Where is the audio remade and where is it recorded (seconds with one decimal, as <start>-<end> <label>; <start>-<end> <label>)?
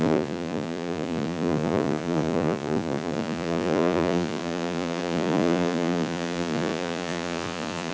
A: 0.0-7.9 remade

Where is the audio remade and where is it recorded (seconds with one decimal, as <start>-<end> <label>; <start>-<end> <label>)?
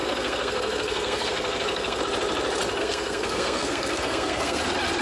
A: 0.0-2.0 remade; 2.0-2.8 recorded; 2.8-4.6 remade; 4.6-5.0 recorded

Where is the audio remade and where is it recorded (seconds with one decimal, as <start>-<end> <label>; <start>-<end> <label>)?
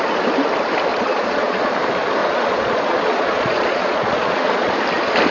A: 0.0-0.9 recorded; 0.9-1.7 remade; 1.7-2.2 recorded; 2.2-4.7 remade; 4.7-5.3 recorded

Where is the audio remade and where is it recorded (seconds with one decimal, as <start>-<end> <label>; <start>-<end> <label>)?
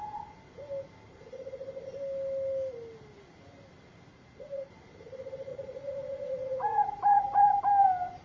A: 0.0-4.1 recorded; 4.1-4.7 remade; 4.7-5.5 recorded; 5.5-7.6 remade; 7.6-8.2 recorded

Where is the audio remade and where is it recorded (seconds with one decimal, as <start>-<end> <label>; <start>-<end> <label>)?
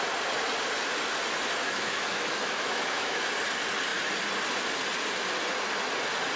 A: 0.0-1.6 recorded; 1.6-3.3 remade; 3.3-6.4 recorded